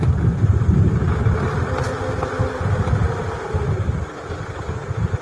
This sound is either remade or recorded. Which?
recorded